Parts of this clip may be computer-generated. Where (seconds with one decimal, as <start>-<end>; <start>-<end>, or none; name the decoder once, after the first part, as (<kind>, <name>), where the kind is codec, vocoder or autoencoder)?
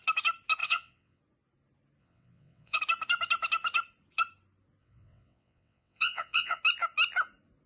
0.6-1.2 (vocoder, WaveNeXt); 2.0-2.8; 4.8-6.6